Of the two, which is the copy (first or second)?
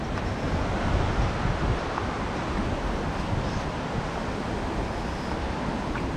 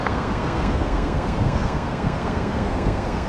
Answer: second